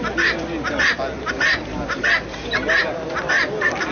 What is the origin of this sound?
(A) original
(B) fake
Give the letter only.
A